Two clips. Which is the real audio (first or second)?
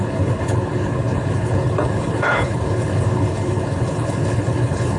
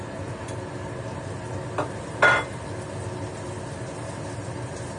second